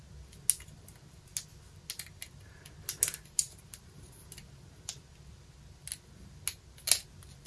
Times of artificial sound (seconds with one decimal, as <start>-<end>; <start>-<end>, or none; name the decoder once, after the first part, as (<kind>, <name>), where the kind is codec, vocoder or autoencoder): none